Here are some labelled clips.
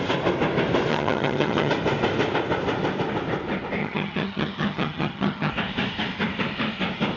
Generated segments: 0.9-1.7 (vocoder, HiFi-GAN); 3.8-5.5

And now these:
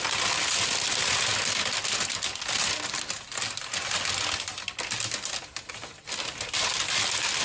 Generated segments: none

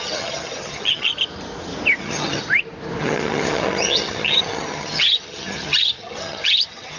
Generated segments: 0.0-1.1 (vocoder, HiFi-GAN); 2.0-2.4; 3.0-7.0

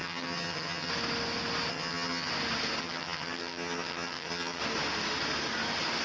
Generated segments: 0.0-0.9 (vocoder, HiFi-GAN); 1.7-2.3; 2.8-4.6

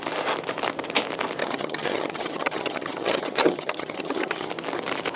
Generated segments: 1.4-4.5 (vocoder, HiFi-GAN)

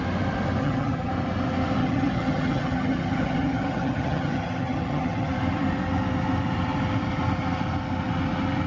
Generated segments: 0.6-1.1 (vocoder, HiFi-GAN); 1.8-5.3

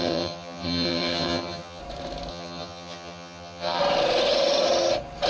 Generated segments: 0.0-1.8 (vocoder, HiFi-GAN); 2.3-3.8